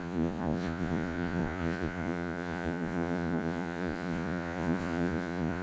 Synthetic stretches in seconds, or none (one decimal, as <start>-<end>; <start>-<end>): 0.0-5.6